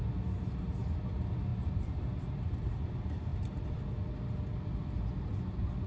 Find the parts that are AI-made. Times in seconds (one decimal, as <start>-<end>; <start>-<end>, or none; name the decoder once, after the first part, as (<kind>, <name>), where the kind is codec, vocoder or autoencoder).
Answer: 1.5-2.9 (vocoder, BigVGAN v2)

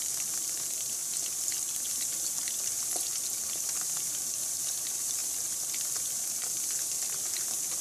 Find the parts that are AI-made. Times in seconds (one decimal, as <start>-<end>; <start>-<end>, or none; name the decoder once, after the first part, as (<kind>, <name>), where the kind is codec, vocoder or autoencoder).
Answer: 0.0-1.0 (vocoder, BigVGAN v2); 3.4-7.8

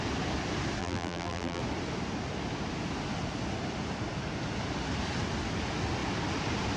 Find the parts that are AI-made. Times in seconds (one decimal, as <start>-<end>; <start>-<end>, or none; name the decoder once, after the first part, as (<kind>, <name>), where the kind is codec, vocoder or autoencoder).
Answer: 0.8-1.6 (vocoder, BigVGAN v2)

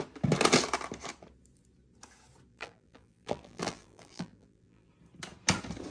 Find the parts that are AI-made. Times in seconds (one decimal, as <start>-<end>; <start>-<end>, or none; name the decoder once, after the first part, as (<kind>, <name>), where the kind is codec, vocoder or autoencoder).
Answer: 2.5-4.9 (vocoder, BigVGAN v2)

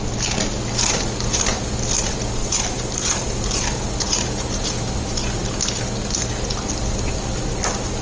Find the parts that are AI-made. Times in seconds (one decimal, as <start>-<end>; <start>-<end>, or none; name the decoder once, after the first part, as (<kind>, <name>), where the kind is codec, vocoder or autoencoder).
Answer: 2.4-3.4 (vocoder, BigVGAN v2)